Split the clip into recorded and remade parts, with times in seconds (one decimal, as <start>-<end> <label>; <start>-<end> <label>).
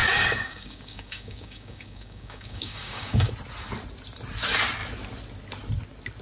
0.0-3.3 remade; 3.3-6.2 recorded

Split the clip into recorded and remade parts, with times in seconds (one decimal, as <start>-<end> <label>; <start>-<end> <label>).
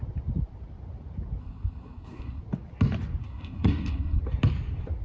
0.0-1.4 recorded; 1.4-2.4 remade; 2.4-3.2 recorded; 3.2-4.2 remade; 4.2-5.0 recorded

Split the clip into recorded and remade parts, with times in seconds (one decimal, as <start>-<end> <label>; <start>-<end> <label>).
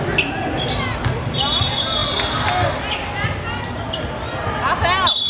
0.0-5.3 recorded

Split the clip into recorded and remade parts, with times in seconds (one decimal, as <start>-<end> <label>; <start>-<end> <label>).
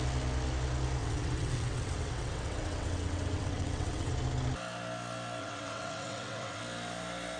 0.0-1.0 recorded; 1.0-4.1 remade; 4.1-5.4 recorded; 5.4-6.6 remade; 6.6-7.4 recorded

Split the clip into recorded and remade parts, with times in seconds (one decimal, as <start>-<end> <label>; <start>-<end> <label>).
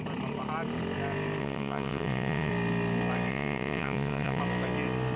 0.0-1.4 recorded; 1.4-2.5 remade; 2.5-3.3 recorded; 3.3-4.4 remade; 4.4-5.2 recorded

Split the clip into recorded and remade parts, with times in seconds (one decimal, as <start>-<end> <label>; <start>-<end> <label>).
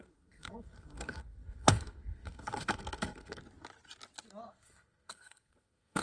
0.0-3.4 remade; 3.4-4.4 recorded; 4.4-6.0 remade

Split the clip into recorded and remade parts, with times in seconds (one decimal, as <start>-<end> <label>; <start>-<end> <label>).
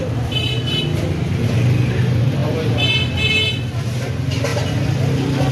0.0-5.5 recorded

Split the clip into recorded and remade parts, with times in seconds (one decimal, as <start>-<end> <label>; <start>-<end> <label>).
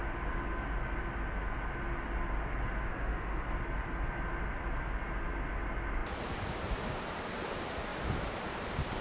0.0-2.9 recorded; 2.9-3.4 remade; 3.4-9.0 recorded